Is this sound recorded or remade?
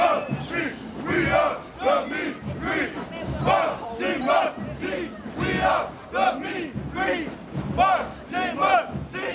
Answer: recorded